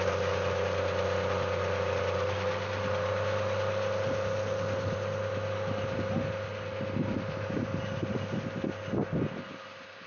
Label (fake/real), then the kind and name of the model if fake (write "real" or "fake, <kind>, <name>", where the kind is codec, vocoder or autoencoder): real